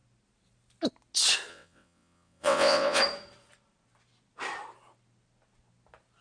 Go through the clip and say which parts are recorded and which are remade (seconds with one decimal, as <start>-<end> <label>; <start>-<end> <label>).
0.0-1.5 recorded; 1.5-3.0 remade; 3.0-6.2 recorded